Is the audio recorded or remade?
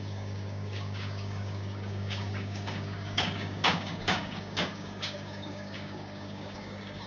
remade